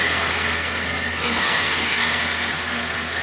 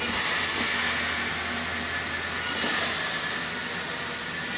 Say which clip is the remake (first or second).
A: first